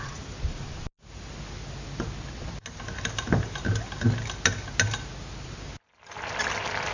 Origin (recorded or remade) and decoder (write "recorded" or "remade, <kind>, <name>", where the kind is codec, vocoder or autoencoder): recorded